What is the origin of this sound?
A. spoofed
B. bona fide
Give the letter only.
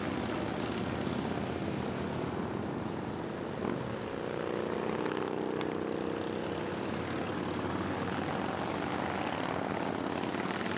B